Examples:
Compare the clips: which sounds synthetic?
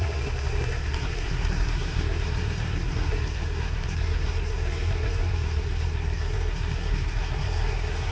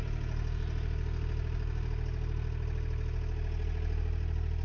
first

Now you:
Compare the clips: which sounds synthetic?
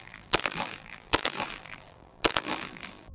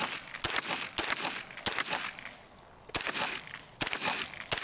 first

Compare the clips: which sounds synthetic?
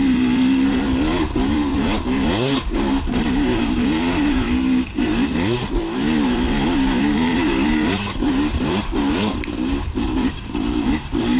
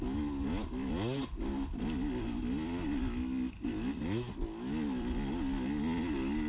first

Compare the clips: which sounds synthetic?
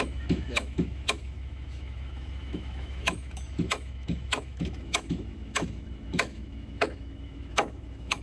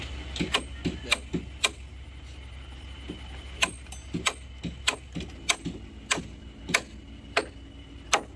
first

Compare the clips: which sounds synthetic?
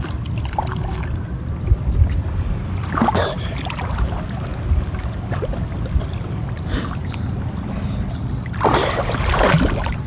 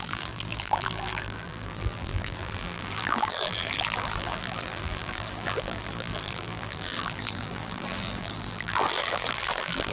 second